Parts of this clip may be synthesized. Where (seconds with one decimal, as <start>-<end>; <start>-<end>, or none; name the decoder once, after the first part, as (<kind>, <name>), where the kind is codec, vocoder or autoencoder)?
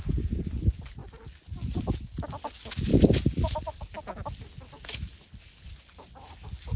none